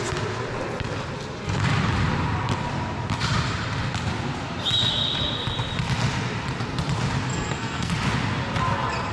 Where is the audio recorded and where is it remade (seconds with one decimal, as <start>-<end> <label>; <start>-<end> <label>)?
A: 0.0-7.3 recorded; 7.3-7.9 remade; 7.9-9.1 recorded